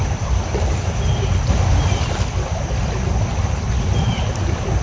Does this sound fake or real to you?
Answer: real